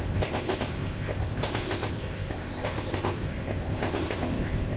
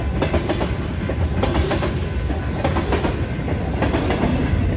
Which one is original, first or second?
second